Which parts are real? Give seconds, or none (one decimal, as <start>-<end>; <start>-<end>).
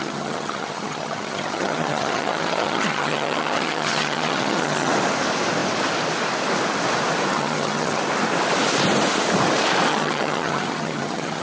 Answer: 4.9-7.3; 8.0-9.9